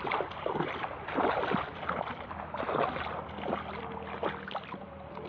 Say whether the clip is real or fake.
real